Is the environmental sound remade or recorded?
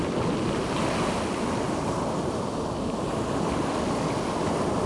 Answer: recorded